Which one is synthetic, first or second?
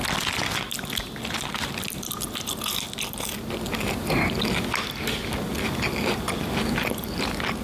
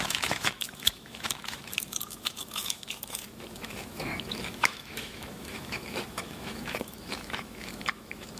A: second